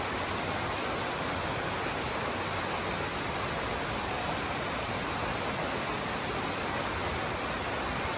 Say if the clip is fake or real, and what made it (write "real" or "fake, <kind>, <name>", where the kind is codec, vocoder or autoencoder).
real